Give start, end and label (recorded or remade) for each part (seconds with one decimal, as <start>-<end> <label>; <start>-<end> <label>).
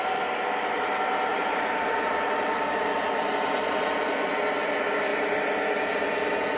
0.0-1.3 recorded; 1.3-4.3 remade; 4.3-6.6 recorded